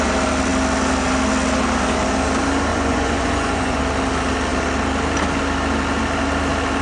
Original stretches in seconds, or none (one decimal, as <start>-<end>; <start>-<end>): 0.0-2.7; 3.8-6.8